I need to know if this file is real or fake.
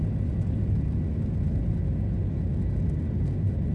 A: real